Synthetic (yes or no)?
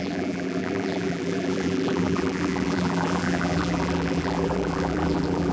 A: yes